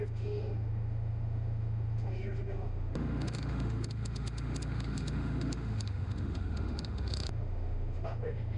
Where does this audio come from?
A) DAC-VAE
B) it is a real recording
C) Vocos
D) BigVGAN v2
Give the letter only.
A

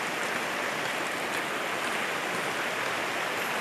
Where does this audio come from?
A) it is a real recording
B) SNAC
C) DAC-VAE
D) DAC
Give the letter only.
A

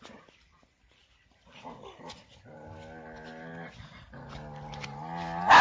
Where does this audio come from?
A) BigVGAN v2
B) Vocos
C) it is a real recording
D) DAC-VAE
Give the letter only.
C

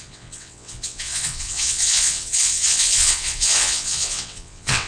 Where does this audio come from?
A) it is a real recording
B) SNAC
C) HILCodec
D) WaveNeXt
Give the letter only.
D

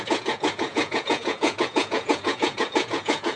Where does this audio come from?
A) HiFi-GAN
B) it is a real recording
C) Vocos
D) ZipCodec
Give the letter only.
C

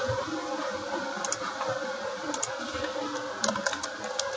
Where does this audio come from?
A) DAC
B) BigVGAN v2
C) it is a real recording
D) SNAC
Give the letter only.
C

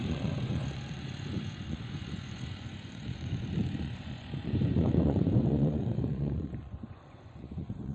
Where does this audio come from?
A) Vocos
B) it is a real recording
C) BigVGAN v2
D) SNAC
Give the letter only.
A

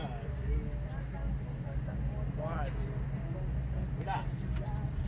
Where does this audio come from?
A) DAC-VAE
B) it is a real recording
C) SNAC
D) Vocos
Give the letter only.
B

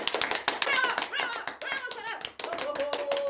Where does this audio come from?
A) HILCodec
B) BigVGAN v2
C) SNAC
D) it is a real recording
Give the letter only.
D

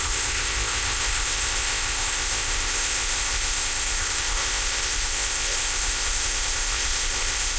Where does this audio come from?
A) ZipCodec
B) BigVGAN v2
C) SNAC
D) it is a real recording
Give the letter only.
A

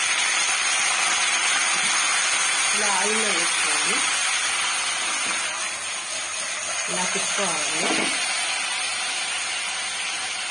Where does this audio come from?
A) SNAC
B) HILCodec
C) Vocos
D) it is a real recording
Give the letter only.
D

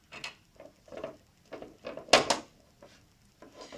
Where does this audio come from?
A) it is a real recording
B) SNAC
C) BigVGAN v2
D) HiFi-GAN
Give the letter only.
A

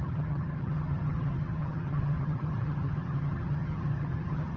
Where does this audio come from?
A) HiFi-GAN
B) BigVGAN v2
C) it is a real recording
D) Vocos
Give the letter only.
A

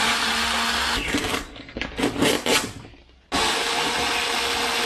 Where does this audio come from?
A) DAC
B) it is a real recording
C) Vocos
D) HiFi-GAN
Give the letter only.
B